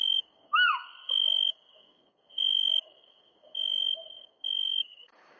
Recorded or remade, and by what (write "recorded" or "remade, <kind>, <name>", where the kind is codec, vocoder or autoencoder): remade, codec, DAC